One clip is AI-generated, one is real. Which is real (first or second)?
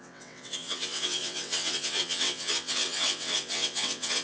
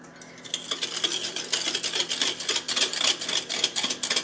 second